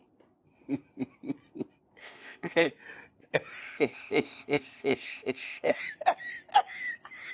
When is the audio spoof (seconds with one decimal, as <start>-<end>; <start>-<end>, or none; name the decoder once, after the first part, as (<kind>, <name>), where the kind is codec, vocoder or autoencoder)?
2.0-2.7 (codec, ZipCodec); 3.6-5.8